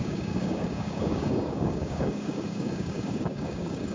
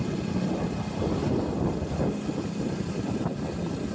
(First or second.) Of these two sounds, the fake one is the first